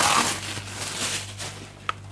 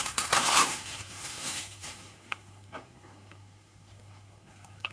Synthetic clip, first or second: second